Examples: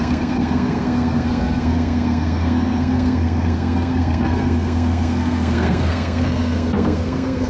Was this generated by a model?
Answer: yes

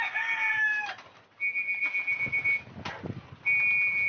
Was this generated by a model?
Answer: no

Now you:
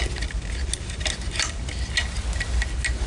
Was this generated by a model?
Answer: no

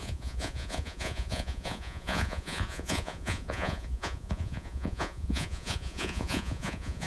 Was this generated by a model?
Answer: yes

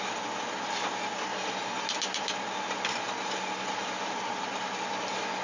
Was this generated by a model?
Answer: no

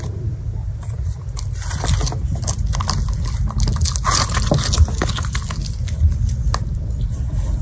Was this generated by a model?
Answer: no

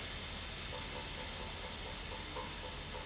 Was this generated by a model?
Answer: no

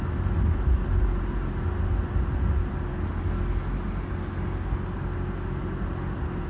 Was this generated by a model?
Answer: no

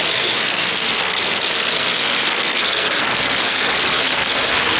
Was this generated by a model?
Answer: yes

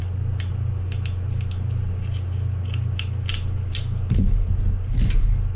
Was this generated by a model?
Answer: no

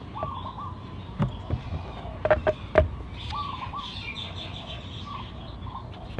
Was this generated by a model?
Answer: no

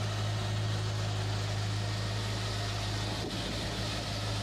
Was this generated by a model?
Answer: no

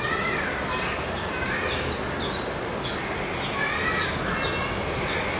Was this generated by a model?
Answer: no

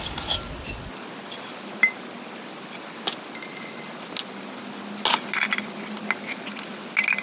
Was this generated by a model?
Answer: no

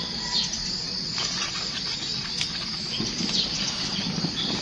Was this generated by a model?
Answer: no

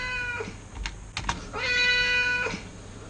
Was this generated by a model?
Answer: no